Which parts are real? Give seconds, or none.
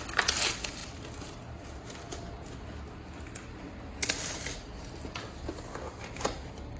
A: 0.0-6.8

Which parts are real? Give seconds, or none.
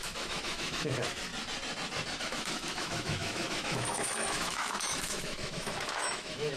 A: 1.3-2.2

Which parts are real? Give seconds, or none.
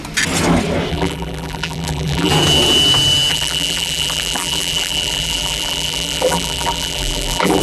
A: 0.0-0.9; 2.3-3.3